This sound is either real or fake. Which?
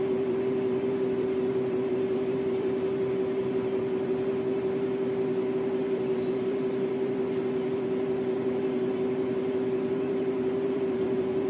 fake